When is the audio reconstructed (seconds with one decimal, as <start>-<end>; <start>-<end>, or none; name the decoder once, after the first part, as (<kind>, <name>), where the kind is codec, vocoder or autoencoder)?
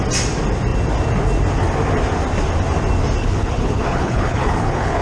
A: 3.2-5.0 (codec, HILCodec)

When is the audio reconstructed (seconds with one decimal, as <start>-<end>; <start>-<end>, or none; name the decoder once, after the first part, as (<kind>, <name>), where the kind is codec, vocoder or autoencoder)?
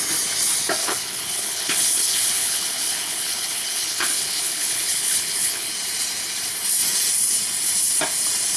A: 0.8-5.7 (codec, HILCodec)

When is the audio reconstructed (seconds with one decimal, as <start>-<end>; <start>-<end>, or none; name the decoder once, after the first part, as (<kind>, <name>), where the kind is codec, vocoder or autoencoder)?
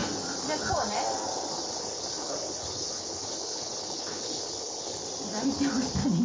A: 1.6-5.0 (codec, HILCodec)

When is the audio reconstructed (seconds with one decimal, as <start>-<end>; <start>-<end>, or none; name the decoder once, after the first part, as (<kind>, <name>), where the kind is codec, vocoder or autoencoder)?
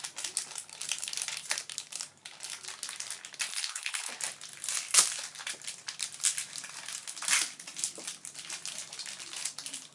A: 3.5-4.1 (codec, HILCodec)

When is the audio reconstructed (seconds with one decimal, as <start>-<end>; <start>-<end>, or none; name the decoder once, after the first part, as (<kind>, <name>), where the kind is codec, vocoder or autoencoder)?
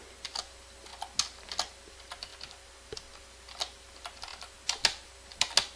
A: none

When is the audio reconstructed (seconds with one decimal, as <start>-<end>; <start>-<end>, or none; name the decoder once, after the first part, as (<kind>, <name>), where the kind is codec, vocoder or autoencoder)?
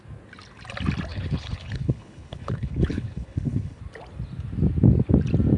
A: 1.1-3.8 (codec, HILCodec)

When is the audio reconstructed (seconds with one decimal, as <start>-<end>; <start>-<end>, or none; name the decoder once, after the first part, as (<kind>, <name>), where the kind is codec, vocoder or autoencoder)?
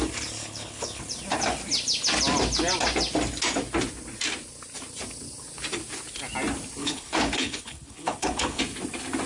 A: 0.4-1.0 (codec, HILCodec); 6.8-8.6